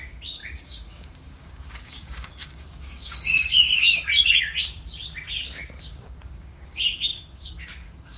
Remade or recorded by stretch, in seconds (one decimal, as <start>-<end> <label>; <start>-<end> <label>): 0.0-4.1 remade; 4.1-5.8 recorded; 5.8-8.2 remade